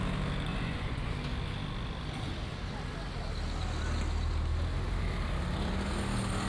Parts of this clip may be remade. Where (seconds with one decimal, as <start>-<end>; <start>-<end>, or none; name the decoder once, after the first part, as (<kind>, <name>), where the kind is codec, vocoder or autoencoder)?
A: 0.5-1.1 (vocoder, Vocos)